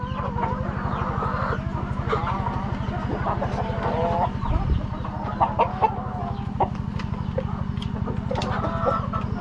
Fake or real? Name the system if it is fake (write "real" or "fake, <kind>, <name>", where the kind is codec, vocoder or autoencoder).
real